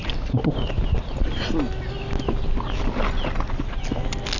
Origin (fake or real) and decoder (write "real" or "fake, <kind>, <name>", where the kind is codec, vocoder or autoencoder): real